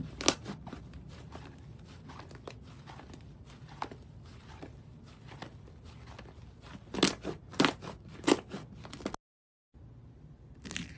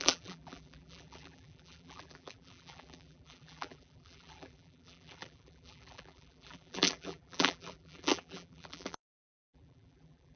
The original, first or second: first